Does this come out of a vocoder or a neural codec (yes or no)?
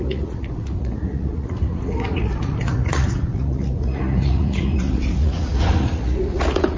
yes